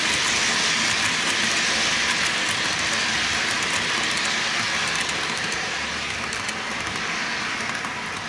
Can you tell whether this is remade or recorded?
recorded